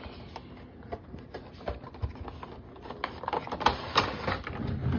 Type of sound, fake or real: real